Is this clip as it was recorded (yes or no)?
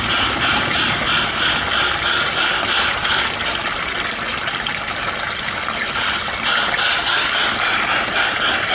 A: yes